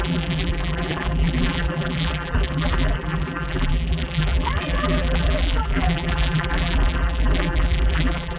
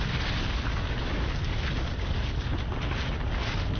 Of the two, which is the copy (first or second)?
first